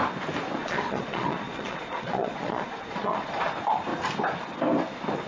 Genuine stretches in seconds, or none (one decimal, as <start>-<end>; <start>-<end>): 0.0-0.6; 3.5-5.3